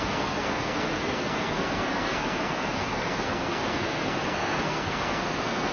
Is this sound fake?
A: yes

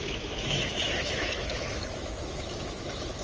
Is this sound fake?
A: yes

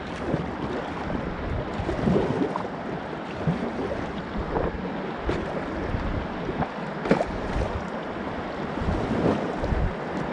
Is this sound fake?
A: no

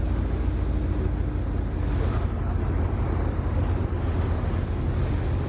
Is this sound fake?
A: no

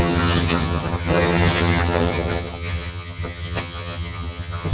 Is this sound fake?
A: yes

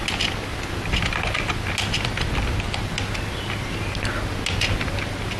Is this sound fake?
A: no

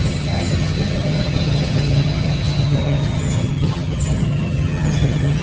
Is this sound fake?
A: yes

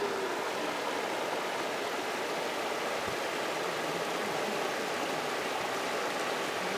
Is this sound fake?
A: no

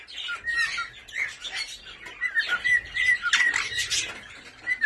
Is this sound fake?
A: no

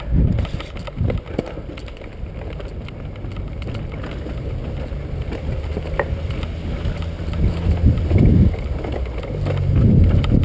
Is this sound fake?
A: no